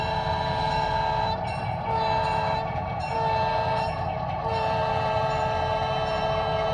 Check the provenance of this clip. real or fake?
fake